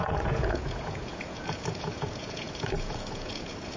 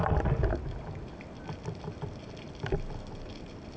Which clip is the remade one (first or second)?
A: first